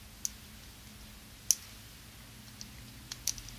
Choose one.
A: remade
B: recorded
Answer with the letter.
B